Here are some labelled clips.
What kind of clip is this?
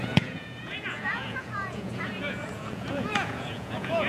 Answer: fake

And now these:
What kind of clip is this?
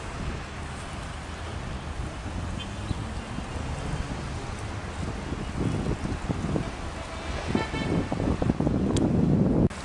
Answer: real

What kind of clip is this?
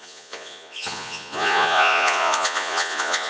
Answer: fake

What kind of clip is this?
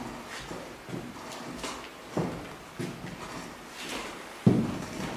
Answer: real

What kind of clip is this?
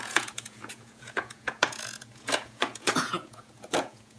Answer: fake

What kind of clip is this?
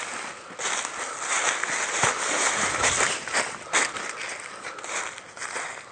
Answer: real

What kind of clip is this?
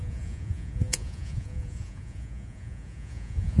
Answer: fake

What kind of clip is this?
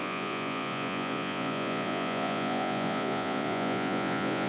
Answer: fake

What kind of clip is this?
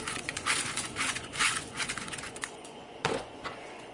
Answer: fake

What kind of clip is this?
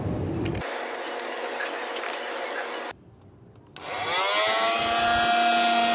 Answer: real